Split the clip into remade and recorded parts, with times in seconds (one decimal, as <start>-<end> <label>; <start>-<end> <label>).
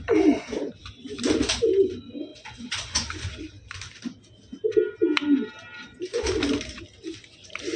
0.0-2.3 recorded; 2.3-3.4 remade; 3.4-5.8 recorded; 5.8-6.3 remade; 6.3-7.8 recorded